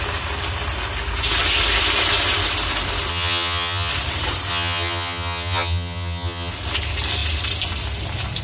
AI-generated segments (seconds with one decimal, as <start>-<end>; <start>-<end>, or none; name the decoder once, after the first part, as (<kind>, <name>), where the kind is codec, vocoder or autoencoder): 3.1-3.9 (vocoder, HiFi-GAN); 4.5-6.5

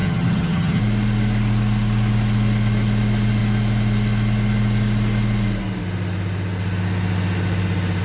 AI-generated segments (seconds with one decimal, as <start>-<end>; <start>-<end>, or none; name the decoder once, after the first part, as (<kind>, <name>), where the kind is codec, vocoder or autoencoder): 0.0-0.8 (vocoder, HiFi-GAN)

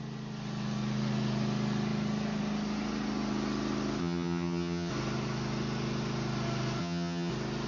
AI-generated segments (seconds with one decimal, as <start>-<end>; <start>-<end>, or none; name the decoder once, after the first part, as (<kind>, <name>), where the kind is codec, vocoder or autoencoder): 4.0-4.9 (vocoder, HiFi-GAN); 6.8-7.3

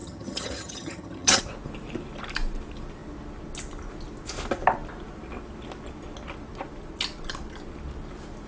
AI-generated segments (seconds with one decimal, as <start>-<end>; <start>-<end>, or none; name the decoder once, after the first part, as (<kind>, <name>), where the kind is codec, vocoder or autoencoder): 0.0-1.4 (vocoder, HiFi-GAN)